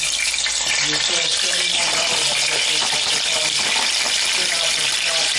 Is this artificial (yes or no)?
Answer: no